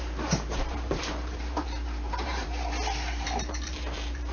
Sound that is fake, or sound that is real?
fake